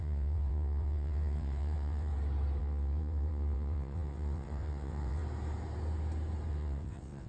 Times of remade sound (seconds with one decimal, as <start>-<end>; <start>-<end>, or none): 0.0-2.1; 2.6-5.2; 6.5-7.3